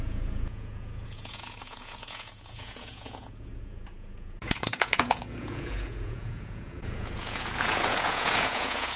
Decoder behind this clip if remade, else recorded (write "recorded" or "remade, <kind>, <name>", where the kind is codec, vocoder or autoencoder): remade, vocoder, Vocos